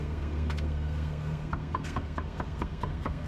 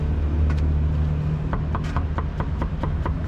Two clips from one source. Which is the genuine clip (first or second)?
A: second